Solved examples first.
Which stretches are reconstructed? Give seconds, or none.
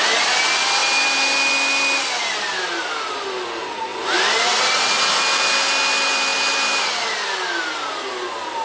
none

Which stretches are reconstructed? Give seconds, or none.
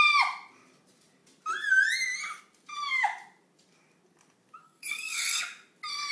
4.6-5.4 (codec, SNAC)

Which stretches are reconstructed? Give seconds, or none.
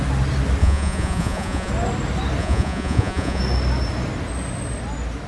0.6-1.7 (vocoder, Vocos); 2.4-3.4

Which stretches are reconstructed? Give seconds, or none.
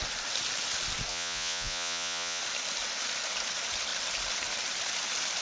1.1-2.4 (vocoder, Vocos)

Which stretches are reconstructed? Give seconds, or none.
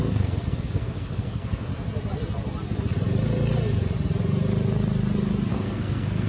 0.0-1.7 (codec, SNAC); 5.5-6.3